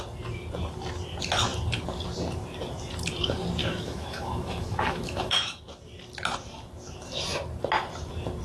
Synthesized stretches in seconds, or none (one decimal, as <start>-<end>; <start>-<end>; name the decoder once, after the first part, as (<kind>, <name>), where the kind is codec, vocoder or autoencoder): 3.6-5.6 (autoencoder, DAC-VAE)